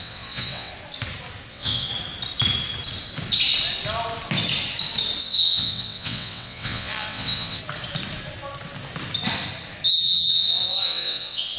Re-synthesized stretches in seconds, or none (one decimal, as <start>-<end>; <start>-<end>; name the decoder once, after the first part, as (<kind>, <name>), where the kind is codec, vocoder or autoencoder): 0.0-0.7 (vocoder, WaveNeXt); 1.5-1.9; 5.2-7.6; 10.0-11.6